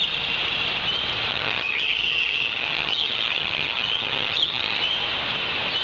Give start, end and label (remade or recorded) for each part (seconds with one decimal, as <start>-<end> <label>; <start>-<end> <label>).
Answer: 0.0-1.3 recorded; 1.3-4.8 remade; 4.8-5.8 recorded

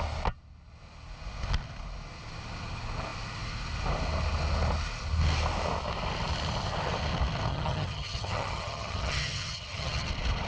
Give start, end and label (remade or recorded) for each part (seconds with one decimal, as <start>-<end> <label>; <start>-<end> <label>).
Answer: 0.0-7.5 recorded; 7.5-10.1 remade; 10.1-10.5 recorded

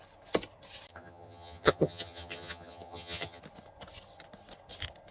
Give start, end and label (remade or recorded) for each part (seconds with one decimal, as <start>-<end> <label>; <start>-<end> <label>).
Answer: 0.0-0.9 recorded; 0.9-3.4 remade; 3.4-5.1 recorded